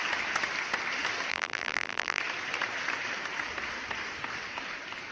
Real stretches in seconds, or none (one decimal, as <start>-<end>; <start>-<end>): 0.0-1.3; 2.2-5.1